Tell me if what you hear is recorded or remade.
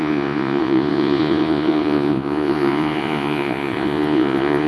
remade